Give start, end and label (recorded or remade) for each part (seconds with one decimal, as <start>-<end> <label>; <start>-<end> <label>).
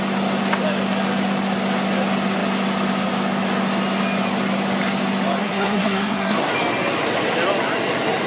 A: 0.0-5.4 recorded; 5.4-6.5 remade; 6.5-8.3 recorded